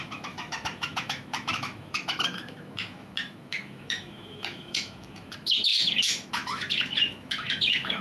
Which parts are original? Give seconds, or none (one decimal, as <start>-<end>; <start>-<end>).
none